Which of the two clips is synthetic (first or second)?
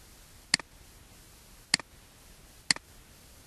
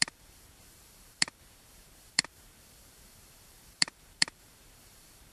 second